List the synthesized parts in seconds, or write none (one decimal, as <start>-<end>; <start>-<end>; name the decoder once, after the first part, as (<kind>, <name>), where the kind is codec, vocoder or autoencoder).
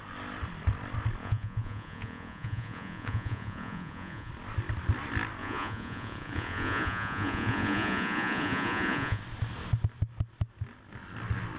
1.2-4.3 (vocoder, Vocos); 5.4-9.2